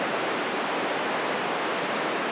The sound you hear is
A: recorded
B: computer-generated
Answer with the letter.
A